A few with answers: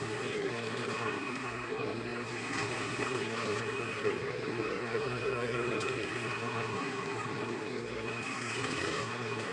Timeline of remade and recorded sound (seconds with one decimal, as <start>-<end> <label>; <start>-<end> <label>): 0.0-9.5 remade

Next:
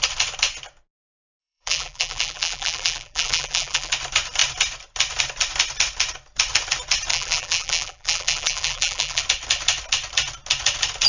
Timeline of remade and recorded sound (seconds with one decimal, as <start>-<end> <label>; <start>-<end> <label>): 0.0-1.4 recorded; 1.4-3.9 remade; 3.9-7.1 recorded; 7.1-9.2 remade; 9.2-11.1 recorded

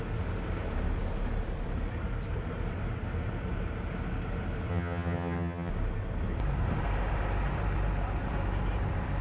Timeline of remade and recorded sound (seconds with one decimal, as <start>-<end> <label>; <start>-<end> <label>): 0.0-4.7 recorded; 4.7-5.7 remade; 5.7-9.2 recorded

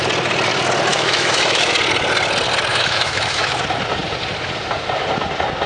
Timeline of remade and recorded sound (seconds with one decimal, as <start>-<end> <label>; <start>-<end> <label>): 0.0-0.9 recorded; 0.9-1.7 remade; 1.7-2.7 recorded; 2.7-3.6 remade; 3.6-5.7 recorded

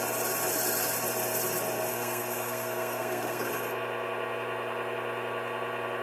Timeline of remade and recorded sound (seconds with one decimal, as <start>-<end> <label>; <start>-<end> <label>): 0.0-1.9 recorded; 1.9-3.5 remade; 3.5-6.0 recorded